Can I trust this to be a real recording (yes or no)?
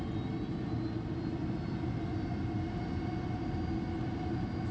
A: yes